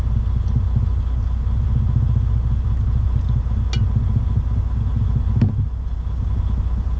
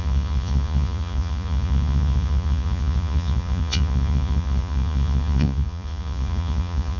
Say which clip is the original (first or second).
first